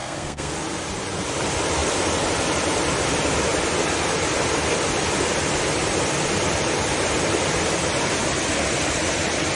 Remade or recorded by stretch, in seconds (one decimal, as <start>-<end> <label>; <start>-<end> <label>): 0.0-0.5 remade; 0.5-9.6 recorded